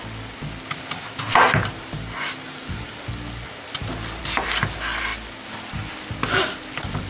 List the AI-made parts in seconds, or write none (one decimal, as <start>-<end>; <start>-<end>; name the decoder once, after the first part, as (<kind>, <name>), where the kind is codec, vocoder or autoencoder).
none

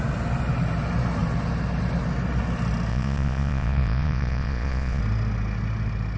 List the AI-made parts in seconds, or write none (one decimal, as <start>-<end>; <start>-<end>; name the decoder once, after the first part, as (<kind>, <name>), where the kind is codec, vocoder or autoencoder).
2.9-5.0 (vocoder, Vocos)

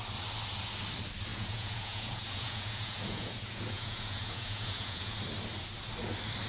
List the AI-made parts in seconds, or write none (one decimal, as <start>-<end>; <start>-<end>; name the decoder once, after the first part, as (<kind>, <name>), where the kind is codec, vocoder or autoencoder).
1.3-5.2 (vocoder, Vocos)

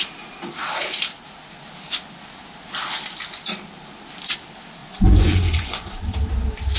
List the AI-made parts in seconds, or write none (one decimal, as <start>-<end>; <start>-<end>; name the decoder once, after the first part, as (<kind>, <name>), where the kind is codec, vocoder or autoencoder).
4.8-6.0 (vocoder, Vocos)

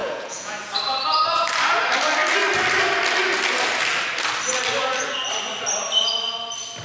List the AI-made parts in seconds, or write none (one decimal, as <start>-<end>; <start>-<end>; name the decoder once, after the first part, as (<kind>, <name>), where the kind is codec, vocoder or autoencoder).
0.0-0.7 (vocoder, Vocos)

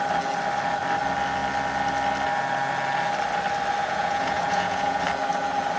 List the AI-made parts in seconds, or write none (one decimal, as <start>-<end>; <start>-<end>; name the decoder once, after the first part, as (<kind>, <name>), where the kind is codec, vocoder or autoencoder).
3.8-5.0 (vocoder, Vocos)

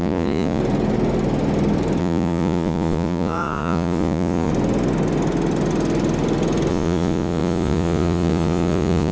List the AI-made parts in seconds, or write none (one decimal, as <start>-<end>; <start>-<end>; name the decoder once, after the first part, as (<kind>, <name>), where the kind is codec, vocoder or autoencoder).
0.0-0.6 (vocoder, Vocos); 2.0-4.5; 6.7-9.1